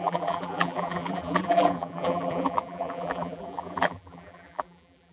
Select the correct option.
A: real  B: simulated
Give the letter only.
B